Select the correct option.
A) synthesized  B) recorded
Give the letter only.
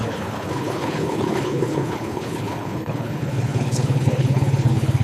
A